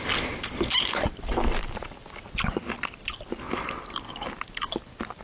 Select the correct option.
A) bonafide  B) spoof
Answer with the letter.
A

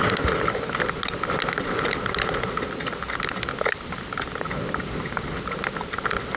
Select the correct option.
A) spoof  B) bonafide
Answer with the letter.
B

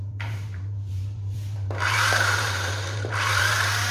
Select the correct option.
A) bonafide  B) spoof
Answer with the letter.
B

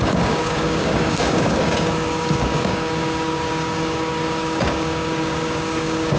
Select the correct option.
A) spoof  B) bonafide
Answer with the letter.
A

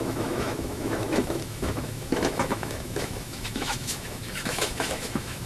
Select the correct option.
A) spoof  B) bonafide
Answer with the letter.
A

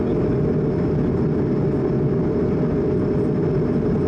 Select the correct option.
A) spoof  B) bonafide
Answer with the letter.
B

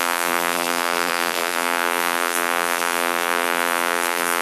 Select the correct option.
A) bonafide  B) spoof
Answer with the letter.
B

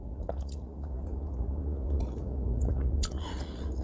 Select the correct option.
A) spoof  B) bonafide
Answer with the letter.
A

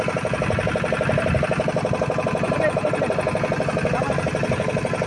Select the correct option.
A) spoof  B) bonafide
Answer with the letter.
B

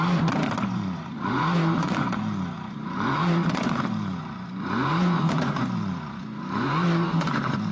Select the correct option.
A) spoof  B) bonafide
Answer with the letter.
A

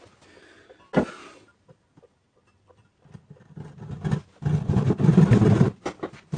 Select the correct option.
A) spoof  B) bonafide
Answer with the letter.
B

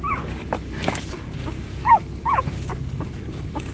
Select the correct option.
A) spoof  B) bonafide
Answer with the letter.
A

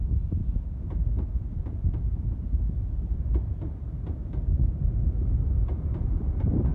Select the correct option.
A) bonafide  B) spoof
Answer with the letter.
A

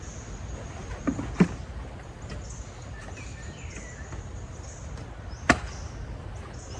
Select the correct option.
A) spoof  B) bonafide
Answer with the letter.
B